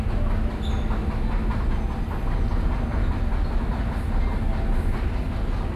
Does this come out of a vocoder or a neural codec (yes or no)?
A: no